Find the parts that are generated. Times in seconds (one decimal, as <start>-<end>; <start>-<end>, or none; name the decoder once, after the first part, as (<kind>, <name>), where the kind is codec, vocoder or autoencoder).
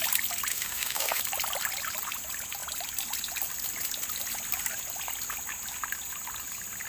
0.5-1.2 (autoencoder, DAC-VAE)